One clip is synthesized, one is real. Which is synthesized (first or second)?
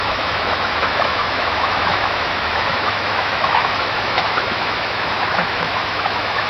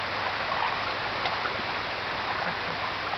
first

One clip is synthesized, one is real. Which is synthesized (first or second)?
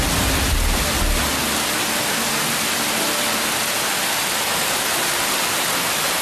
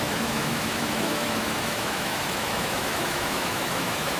second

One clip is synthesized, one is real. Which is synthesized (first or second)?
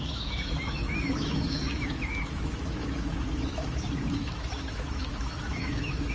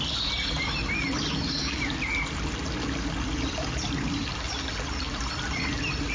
first